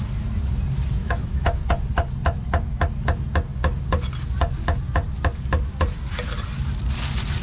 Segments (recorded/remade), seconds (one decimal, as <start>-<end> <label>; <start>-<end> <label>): 0.0-1.0 recorded; 1.0-1.6 remade; 1.6-7.4 recorded